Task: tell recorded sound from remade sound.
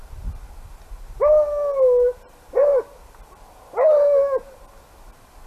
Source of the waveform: recorded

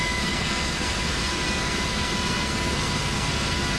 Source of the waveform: remade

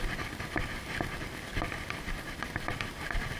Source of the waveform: recorded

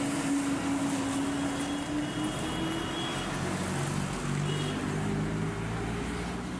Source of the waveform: recorded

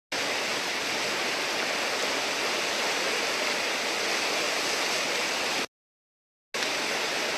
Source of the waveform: recorded